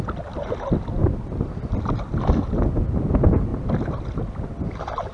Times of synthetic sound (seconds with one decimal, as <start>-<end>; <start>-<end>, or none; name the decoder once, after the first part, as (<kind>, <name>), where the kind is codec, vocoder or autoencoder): none